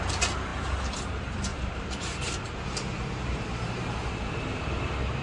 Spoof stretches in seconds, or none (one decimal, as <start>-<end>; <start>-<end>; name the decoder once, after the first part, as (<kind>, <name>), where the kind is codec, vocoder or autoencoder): 1.5-4.6 (vocoder, BigVGAN v2)